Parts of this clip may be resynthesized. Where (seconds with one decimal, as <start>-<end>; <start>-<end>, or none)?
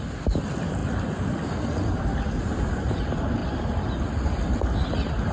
none